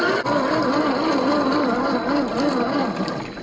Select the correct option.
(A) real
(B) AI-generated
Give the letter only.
A